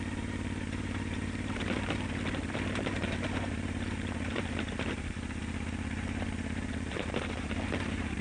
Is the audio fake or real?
fake